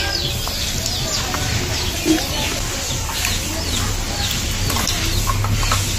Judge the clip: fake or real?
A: real